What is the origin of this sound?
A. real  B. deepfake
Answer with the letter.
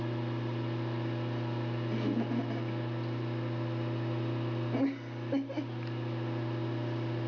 A